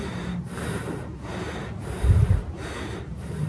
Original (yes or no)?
yes